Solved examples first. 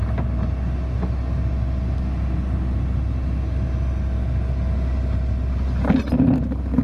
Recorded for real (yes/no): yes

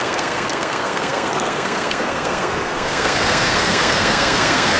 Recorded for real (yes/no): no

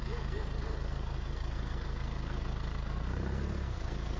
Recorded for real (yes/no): no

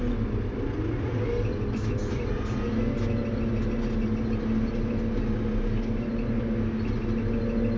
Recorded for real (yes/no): yes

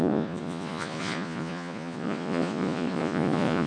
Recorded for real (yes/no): no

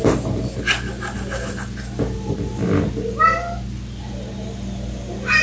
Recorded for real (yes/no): yes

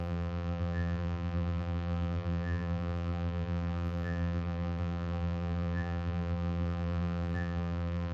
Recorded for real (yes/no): no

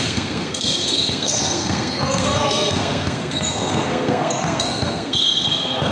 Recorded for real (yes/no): no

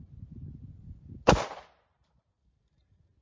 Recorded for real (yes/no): yes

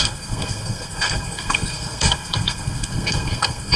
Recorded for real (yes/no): no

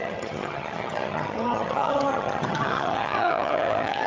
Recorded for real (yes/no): no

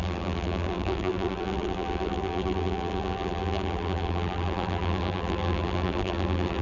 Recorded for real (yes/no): no